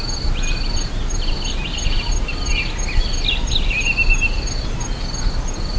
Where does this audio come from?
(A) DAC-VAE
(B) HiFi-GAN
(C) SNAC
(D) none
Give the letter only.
D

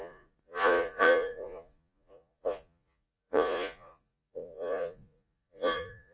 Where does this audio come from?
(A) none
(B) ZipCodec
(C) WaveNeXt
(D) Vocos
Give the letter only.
D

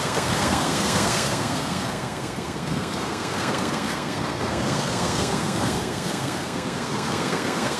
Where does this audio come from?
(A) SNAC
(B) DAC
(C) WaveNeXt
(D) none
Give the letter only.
A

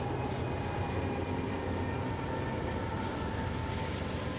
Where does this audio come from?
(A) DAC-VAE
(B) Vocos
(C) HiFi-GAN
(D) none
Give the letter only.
D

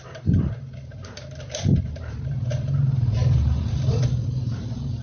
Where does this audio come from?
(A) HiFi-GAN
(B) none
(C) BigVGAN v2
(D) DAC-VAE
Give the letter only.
C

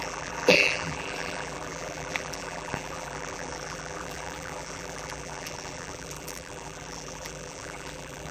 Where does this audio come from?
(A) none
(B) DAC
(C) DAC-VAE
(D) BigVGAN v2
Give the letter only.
D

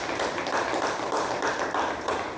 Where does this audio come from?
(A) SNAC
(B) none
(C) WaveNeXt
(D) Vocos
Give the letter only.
B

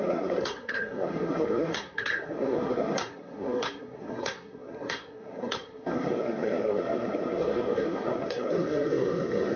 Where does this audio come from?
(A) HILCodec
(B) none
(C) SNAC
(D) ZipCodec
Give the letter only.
C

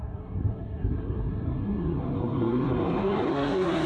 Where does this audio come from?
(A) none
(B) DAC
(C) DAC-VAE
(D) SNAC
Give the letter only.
D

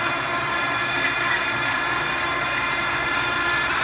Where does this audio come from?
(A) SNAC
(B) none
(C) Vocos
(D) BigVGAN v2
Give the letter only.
D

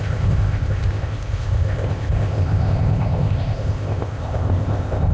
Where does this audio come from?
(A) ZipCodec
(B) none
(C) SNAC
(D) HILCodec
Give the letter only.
A